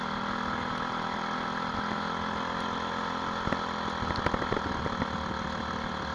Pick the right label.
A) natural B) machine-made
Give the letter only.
A